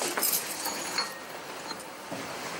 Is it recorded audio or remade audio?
remade